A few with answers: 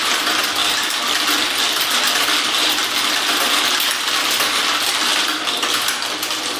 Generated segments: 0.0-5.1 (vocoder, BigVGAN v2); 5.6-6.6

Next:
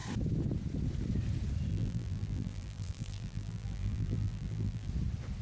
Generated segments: 1.7-4.9 (vocoder, BigVGAN v2)

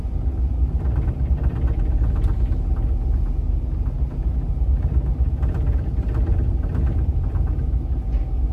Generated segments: none

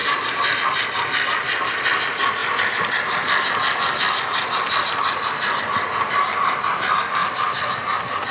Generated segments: 0.0-0.6 (vocoder, BigVGAN v2)